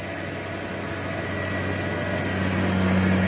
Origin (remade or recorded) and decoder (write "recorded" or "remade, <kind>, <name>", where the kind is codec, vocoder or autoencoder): recorded